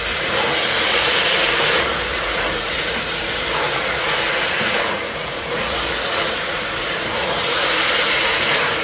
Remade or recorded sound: remade